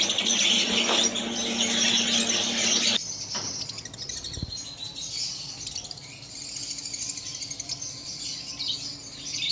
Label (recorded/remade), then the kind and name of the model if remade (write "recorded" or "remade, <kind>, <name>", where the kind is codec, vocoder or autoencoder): recorded